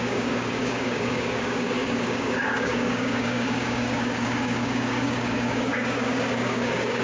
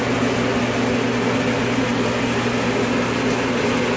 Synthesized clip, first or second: first